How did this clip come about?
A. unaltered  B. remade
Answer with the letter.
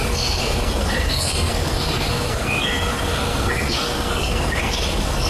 B